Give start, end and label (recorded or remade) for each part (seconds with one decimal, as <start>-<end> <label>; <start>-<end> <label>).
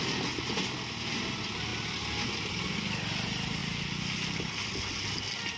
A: 0.0-5.6 recorded